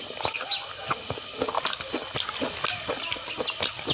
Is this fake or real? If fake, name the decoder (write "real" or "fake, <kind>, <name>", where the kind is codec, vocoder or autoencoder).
real